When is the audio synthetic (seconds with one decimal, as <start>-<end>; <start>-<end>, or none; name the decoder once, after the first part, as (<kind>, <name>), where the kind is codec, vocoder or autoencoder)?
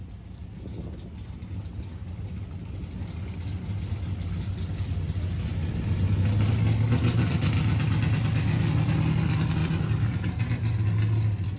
none